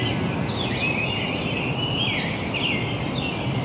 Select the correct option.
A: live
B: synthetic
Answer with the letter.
A